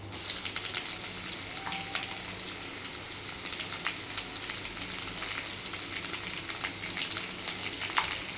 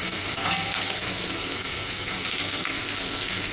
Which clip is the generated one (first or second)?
second